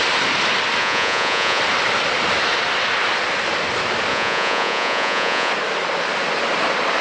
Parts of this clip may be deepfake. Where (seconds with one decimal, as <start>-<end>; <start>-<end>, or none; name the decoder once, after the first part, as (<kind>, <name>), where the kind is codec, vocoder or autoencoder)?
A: 0.8-1.6 (vocoder, Vocos); 4.1-5.5